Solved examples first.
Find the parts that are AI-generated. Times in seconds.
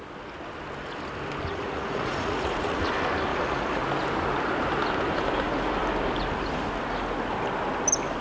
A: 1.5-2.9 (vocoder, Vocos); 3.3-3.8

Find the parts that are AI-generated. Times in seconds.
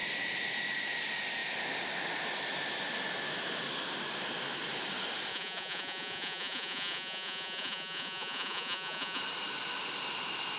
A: 5.3-9.2 (vocoder, Vocos)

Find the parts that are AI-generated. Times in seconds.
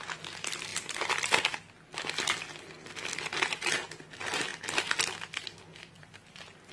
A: 0.7-1.7 (vocoder, BigVGAN v2)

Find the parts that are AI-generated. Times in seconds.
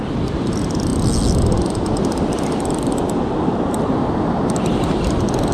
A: 0.0-0.9 (vocoder, BigVGAN v2); 3.2-5.5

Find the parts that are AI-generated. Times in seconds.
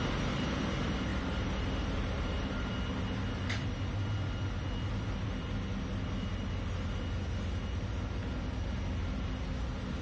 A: 1.1-2.7 (vocoder, BigVGAN v2)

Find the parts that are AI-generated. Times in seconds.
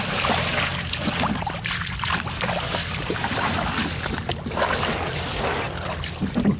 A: none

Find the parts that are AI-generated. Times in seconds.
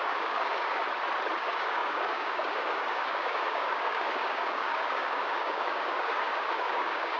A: 0.0-0.8 (codec, DAC); 1.4-7.2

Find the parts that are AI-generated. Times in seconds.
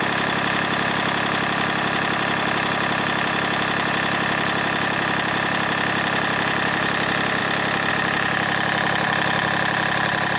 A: 0.0-7.4 (vocoder, BigVGAN v2); 7.9-10.4